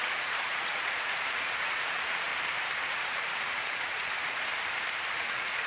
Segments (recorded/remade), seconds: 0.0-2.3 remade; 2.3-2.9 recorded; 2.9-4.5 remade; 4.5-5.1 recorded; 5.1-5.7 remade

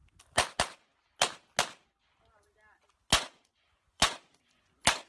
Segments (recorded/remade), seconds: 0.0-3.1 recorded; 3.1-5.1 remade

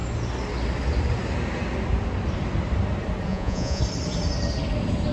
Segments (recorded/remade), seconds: 0.0-3.3 recorded; 3.3-3.8 remade; 3.8-5.1 recorded

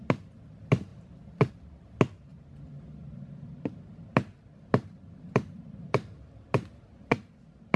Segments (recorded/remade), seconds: 0.0-7.8 recorded

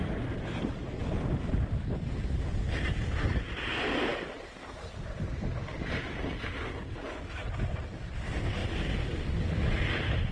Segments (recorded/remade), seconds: 0.0-10.3 recorded

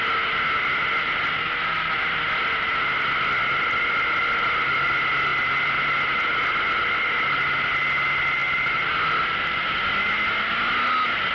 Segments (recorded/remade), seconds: 0.0-11.3 recorded